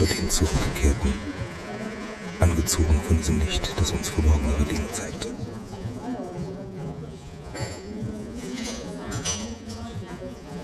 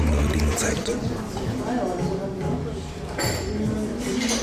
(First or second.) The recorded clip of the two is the second